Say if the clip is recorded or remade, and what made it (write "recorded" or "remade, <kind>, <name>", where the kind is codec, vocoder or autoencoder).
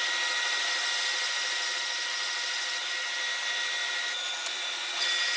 recorded